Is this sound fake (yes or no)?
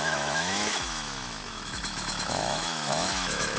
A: yes